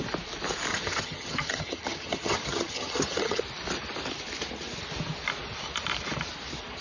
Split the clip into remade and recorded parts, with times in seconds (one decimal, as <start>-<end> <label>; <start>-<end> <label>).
0.0-0.7 recorded; 0.7-3.4 remade; 3.4-6.8 recorded